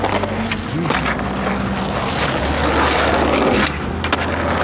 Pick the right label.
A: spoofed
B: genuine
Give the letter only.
B